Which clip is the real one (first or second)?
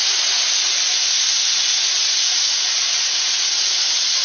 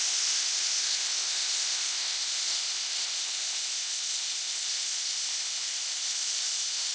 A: first